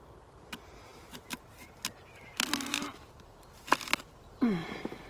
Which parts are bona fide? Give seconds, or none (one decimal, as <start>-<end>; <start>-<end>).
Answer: 0.0-5.1